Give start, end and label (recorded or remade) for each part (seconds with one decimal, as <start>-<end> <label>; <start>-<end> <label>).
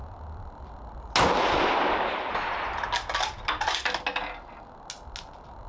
0.0-5.7 recorded